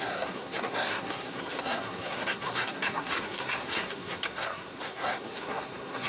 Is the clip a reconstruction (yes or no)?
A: yes